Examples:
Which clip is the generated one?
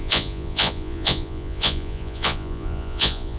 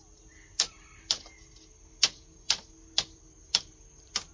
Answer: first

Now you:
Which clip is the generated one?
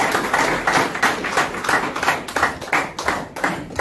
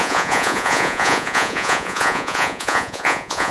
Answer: second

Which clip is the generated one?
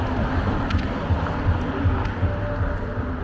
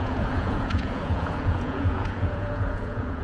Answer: second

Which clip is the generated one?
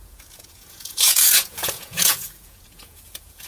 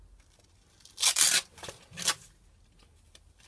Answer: first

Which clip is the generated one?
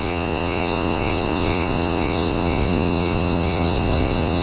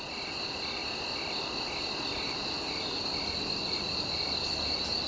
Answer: first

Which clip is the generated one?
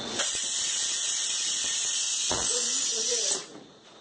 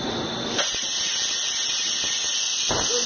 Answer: first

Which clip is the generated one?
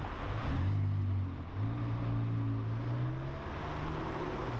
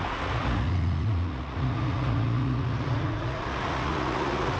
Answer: second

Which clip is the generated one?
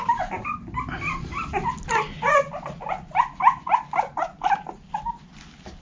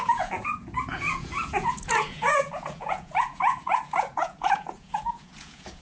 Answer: second